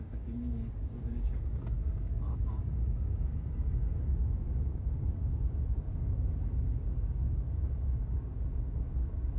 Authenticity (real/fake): fake